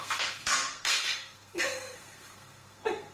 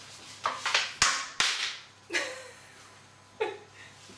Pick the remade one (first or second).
first